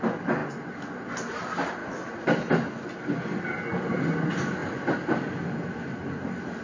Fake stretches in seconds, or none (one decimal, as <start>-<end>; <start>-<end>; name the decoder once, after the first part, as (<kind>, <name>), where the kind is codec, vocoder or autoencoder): none